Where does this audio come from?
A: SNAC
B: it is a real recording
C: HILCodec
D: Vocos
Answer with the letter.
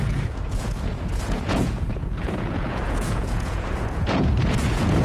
D